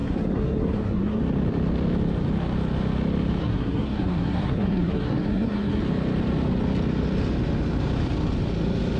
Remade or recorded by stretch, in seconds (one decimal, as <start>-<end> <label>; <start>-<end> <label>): 0.0-1.2 remade; 1.2-3.4 recorded; 3.4-5.8 remade; 5.8-9.0 recorded